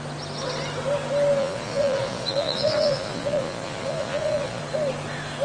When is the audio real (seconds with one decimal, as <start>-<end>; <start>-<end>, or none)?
0.0-1.4; 4.6-5.4